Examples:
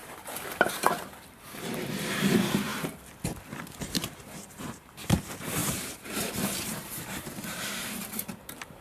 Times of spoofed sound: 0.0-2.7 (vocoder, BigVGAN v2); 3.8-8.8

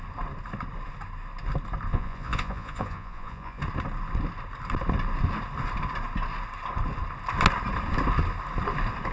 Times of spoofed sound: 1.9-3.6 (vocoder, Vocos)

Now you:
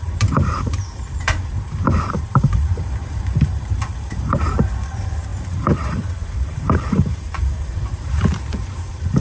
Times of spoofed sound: 0.0-9.2 (vocoder, BigVGAN v2)

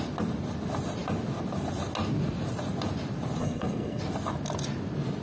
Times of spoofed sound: 3.4-4.0 (codec, SNAC)

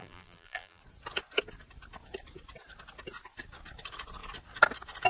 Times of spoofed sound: 0.0-0.8 (vocoder, BigVGAN v2)

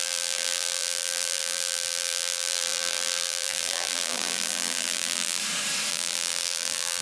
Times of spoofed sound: 0.0-5.4 (vocoder, BigVGAN v2); 5.9-7.0

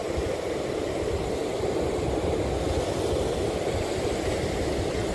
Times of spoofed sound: none

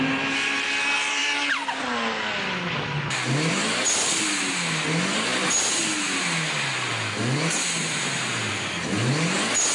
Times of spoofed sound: none